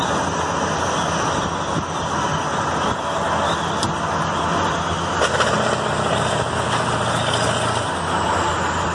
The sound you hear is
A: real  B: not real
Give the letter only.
A